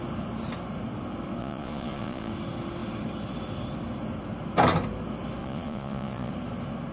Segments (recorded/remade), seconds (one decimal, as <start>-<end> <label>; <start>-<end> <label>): 0.0-1.4 recorded; 1.4-2.3 remade; 2.3-5.4 recorded; 5.4-6.3 remade; 6.3-6.9 recorded